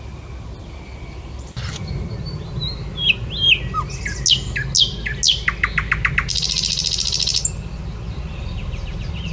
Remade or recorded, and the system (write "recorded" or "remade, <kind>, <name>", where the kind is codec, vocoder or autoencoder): recorded